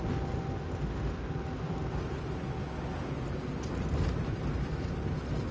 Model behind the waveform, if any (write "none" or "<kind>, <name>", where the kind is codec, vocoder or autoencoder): none